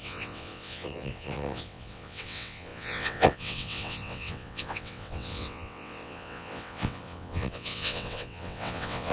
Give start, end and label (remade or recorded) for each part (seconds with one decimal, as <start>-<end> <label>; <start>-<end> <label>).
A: 0.0-9.1 remade